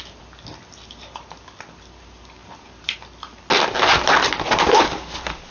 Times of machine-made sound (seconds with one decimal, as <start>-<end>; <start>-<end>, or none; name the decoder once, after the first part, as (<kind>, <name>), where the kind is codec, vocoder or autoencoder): none